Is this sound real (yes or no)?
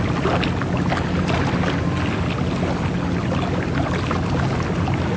yes